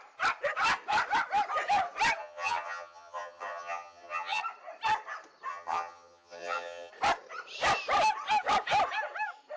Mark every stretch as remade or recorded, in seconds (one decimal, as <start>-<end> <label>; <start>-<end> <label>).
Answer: 0.0-2.2 recorded; 2.2-4.4 remade; 4.4-5.5 recorded; 5.5-6.9 remade; 6.9-9.6 recorded